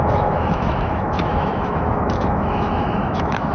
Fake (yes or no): yes